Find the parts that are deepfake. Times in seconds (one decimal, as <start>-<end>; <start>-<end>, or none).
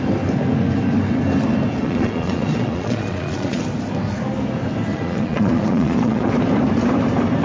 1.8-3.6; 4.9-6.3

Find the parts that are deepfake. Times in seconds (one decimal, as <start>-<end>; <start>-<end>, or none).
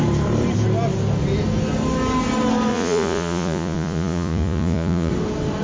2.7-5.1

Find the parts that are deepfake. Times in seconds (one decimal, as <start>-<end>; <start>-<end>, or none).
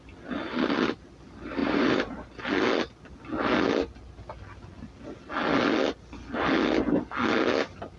1.6-2.2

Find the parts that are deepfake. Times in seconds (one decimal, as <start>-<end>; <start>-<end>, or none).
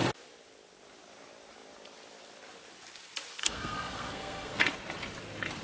3.4-4.6